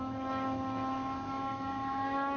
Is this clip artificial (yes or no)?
yes